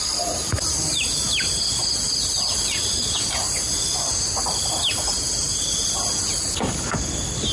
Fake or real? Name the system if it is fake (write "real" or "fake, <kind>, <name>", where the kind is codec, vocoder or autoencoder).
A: real